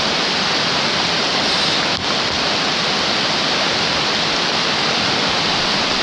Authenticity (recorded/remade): recorded